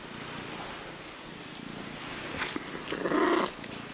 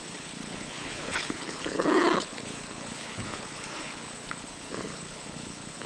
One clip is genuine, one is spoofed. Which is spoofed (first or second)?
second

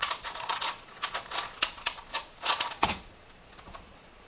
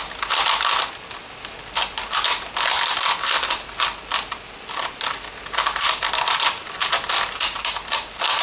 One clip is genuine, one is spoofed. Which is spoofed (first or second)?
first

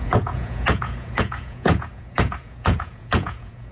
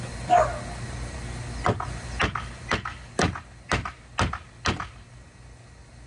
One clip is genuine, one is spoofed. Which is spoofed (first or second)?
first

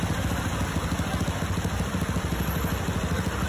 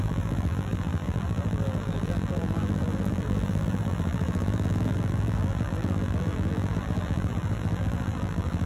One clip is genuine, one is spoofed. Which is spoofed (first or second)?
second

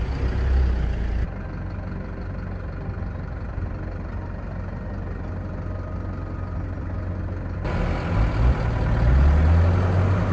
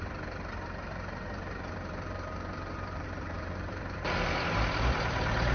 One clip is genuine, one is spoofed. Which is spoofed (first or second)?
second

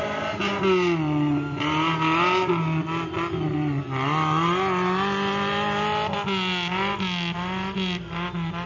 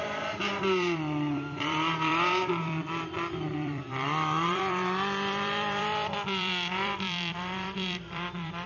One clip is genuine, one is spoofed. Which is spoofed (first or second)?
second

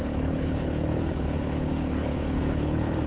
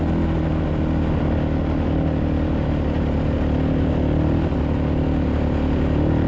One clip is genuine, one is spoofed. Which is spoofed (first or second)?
first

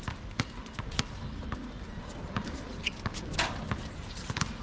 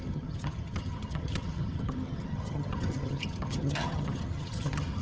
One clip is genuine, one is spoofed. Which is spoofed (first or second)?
second